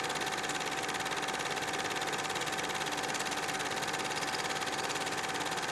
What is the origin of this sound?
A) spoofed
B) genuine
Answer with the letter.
B